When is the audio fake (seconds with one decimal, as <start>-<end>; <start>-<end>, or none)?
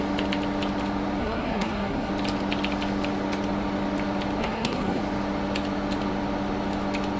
1.2-2.1; 4.4-5.0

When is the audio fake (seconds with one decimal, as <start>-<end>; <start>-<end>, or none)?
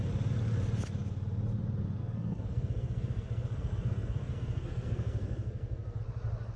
2.0-6.0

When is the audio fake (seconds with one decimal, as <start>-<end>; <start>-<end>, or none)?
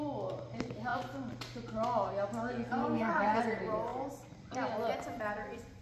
2.8-3.4